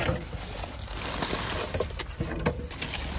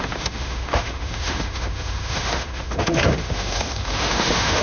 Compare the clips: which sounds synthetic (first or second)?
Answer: second